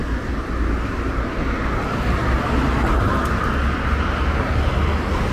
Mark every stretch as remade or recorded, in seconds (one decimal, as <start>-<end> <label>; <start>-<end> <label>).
0.0-5.3 recorded